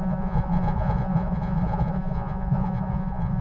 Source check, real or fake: fake